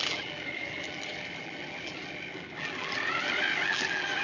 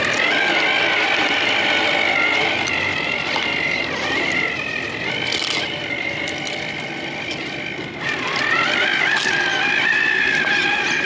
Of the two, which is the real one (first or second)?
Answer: second